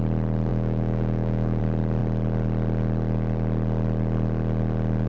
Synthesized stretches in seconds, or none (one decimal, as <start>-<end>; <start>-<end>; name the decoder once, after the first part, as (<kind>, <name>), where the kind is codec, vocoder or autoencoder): 0.5-1.6 (autoencoder, DAC-VAE)